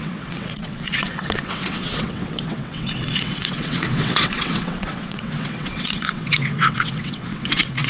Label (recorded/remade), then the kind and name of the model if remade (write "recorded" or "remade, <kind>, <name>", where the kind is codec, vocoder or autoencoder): remade, vocoder, WaveNeXt